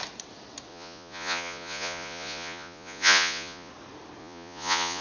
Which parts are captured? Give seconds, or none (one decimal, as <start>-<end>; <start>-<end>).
0.0-0.7; 3.7-4.2